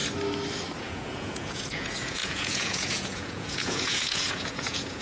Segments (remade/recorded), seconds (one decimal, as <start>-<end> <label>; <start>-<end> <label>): 0.0-0.8 recorded; 0.8-5.0 remade